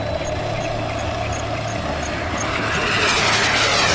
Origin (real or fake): real